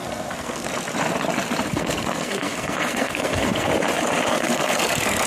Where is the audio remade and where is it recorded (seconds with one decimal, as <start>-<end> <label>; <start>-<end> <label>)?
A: 0.0-0.7 remade; 0.7-1.7 recorded; 1.7-3.7 remade; 3.7-4.3 recorded; 4.3-5.3 remade